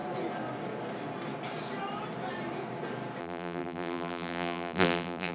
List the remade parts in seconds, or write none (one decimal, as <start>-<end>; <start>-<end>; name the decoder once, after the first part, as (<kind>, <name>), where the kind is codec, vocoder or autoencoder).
3.2-5.3 (vocoder, BigVGAN v2)